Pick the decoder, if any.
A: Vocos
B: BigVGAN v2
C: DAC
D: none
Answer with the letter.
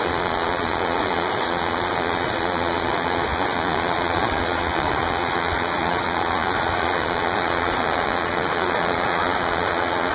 A